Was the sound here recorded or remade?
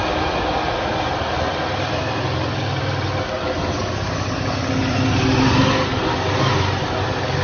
recorded